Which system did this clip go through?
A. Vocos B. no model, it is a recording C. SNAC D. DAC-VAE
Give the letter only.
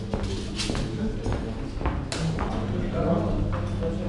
B